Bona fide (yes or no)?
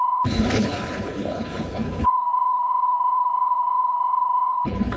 no